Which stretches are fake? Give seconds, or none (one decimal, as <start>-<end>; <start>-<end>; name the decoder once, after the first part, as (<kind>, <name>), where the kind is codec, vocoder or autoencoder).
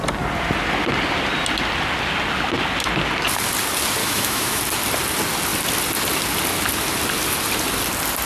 4.0-4.6 (autoencoder, DAC-VAE)